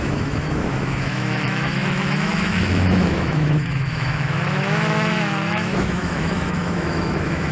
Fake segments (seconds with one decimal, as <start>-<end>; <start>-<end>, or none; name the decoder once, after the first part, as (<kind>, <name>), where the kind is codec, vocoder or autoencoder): 0.0-7.5 (autoencoder, DAC-VAE)